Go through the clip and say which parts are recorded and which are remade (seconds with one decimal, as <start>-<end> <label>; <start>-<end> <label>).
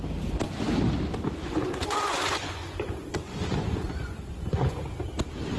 0.0-1.4 recorded; 1.4-4.8 remade; 4.8-5.6 recorded